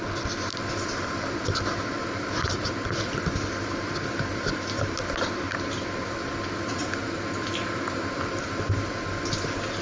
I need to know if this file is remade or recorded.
remade